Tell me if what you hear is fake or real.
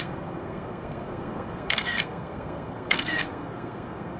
fake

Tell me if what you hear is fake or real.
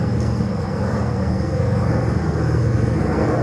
fake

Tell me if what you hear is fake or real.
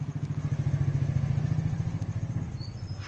real